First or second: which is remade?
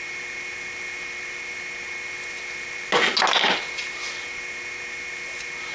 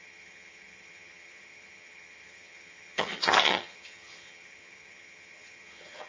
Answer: second